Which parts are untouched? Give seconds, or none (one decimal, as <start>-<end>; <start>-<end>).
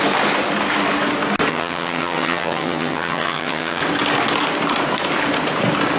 0.0-1.5; 3.8-6.0